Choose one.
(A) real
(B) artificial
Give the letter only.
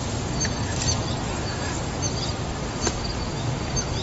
A